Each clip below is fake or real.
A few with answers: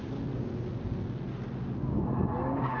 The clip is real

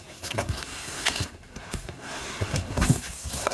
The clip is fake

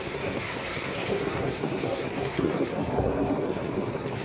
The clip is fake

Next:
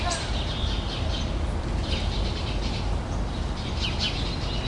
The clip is real